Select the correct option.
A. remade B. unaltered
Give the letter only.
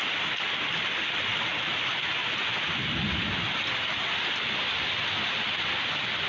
B